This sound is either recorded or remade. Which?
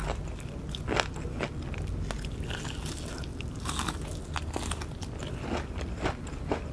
recorded